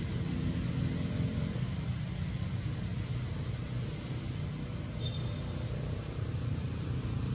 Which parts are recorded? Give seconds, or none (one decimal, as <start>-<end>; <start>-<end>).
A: 0.0-7.3